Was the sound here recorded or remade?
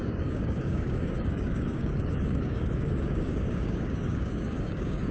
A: remade